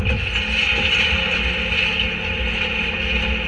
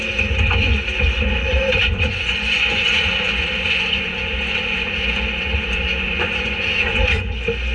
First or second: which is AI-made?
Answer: second